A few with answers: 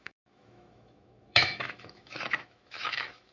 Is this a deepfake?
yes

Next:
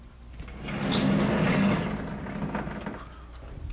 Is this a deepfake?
no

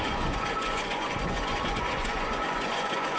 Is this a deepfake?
yes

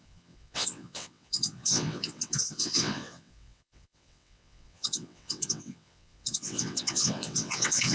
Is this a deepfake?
yes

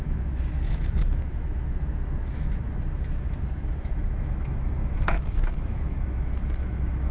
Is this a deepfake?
yes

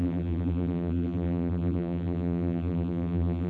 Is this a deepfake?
yes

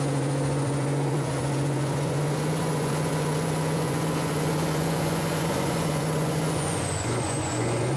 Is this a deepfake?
yes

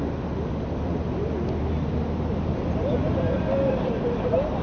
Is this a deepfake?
no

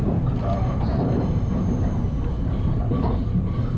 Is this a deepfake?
yes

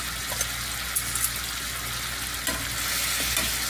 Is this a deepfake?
no